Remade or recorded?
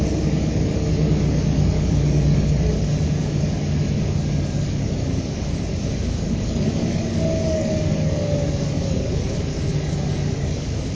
remade